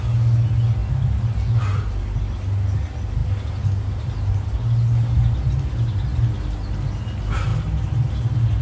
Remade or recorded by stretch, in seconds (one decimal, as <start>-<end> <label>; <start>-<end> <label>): 0.0-8.6 recorded